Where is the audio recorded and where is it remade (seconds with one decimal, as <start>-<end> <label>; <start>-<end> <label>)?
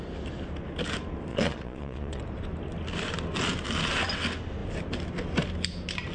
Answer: 0.0-1.3 recorded; 1.3-2.2 remade; 2.2-6.1 recorded